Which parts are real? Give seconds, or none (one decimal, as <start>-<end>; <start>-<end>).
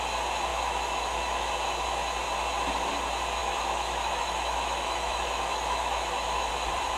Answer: 0.0-0.5; 1.5-3.4; 6.5-7.0